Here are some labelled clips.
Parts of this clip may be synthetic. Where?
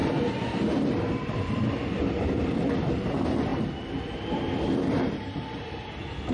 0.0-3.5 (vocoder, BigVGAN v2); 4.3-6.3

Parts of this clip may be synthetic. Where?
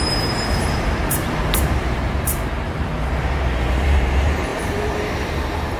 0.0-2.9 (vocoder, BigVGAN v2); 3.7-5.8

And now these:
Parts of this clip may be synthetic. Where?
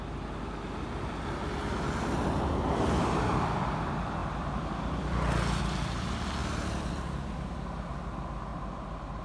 8.5-9.2 (vocoder, BigVGAN v2)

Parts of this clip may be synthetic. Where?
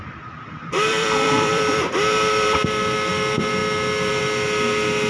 0.0-3.1 (vocoder, BigVGAN v2)